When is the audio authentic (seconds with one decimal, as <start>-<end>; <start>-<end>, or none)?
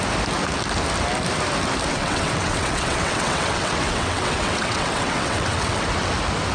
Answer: 0.0-1.9; 5.8-6.5